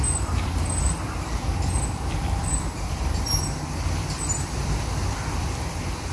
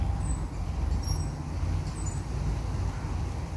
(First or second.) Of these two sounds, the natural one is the second